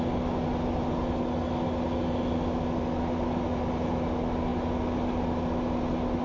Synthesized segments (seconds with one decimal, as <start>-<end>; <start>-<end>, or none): none